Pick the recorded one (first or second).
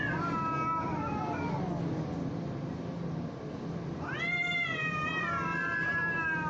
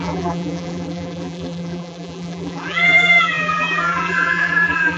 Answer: first